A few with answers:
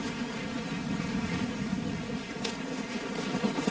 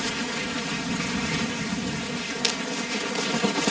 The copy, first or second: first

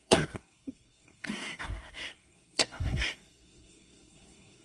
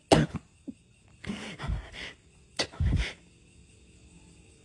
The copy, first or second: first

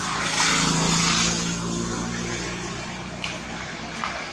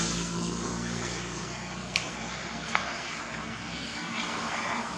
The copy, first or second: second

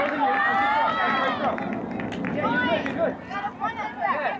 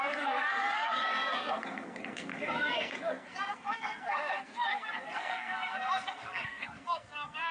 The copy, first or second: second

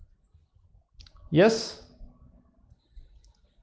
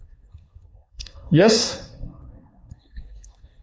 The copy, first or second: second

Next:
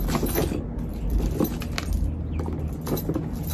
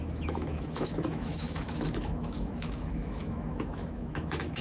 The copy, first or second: second